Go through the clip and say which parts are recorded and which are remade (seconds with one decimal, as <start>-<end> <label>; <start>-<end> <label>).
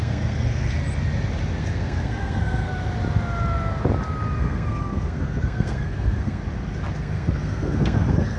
0.0-0.8 remade; 0.8-1.6 recorded; 1.6-2.7 remade; 2.7-4.4 recorded; 4.4-6.4 remade; 6.4-7.0 recorded; 7.0-8.4 remade